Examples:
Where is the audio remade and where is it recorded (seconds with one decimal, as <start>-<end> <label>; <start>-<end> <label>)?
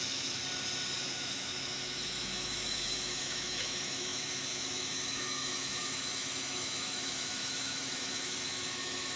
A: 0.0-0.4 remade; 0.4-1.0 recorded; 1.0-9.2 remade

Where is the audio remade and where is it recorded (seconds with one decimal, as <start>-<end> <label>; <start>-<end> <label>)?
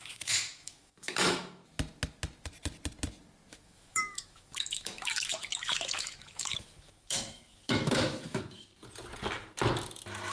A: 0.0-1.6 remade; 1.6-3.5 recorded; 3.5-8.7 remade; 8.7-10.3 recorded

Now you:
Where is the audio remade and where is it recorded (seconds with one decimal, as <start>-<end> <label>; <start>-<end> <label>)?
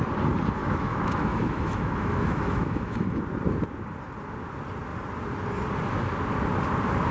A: 0.0-0.6 recorded; 0.6-3.2 remade; 3.2-7.1 recorded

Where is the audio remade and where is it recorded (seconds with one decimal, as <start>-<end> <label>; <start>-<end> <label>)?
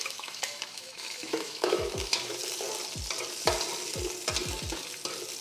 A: 0.0-2.4 remade; 2.4-5.4 recorded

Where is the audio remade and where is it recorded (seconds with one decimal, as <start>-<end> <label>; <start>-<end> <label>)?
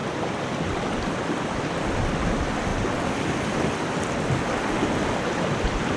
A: 0.0-6.0 recorded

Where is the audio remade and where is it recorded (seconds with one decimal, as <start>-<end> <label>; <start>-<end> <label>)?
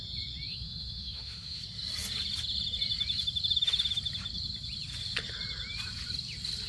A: 0.0-0.5 recorded; 0.5-1.6 remade; 1.6-6.7 recorded